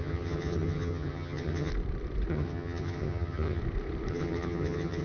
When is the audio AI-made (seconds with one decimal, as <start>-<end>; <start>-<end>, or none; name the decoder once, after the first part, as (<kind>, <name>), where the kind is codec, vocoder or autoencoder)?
0.0-1.7 (vocoder, HiFi-GAN); 2.3-3.6; 4.1-5.0